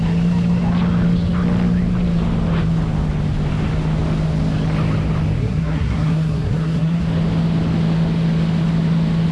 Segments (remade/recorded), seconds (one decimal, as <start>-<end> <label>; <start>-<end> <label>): 0.0-5.4 recorded; 5.4-7.0 remade; 7.0-9.3 recorded